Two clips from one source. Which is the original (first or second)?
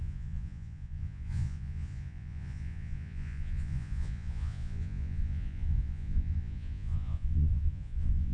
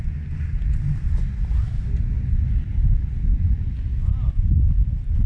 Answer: second